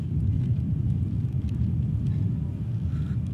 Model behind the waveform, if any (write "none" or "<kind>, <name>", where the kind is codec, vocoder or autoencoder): none